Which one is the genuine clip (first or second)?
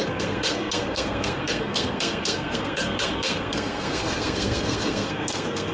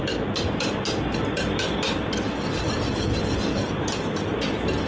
second